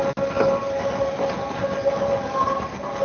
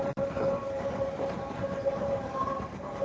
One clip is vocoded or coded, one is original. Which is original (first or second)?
first